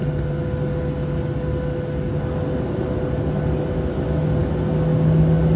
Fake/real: real